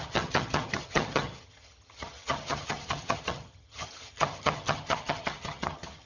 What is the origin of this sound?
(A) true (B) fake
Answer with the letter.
B